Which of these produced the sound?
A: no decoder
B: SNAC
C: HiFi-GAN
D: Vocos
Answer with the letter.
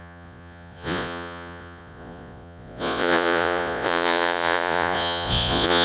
D